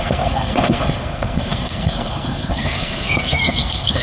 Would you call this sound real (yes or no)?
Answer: no